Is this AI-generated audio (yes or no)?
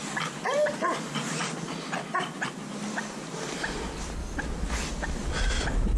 no